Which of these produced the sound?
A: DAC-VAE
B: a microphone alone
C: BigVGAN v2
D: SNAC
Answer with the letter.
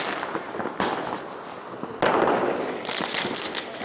B